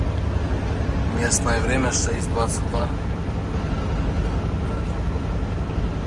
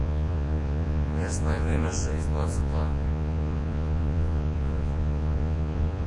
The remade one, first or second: second